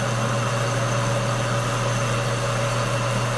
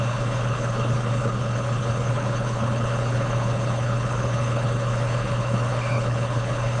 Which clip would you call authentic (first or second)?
first